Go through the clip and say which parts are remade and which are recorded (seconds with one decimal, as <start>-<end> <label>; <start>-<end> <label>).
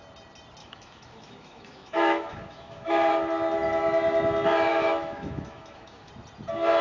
0.0-0.6 recorded; 0.6-3.1 remade; 3.1-4.7 recorded; 4.7-6.1 remade; 6.1-6.8 recorded